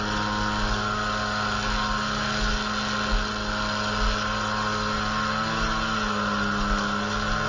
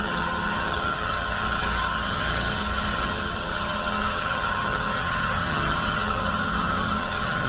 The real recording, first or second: first